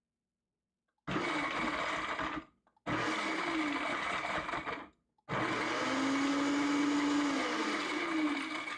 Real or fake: real